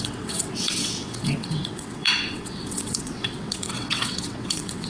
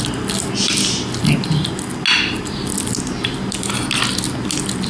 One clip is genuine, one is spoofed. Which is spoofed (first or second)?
first